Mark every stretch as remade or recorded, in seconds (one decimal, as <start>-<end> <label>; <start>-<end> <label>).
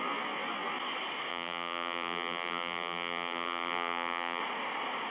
0.0-1.3 recorded; 1.3-4.4 remade; 4.4-5.1 recorded